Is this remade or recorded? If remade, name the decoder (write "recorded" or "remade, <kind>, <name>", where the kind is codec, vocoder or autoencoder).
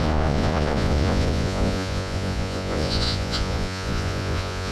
remade, vocoder, Vocos